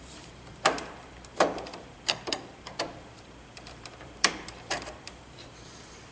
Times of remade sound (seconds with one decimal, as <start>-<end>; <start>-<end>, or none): 0.0-6.1